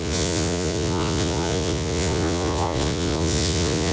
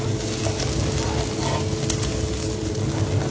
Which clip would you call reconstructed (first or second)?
first